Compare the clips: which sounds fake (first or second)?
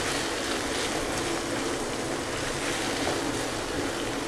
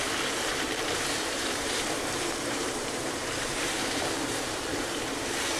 second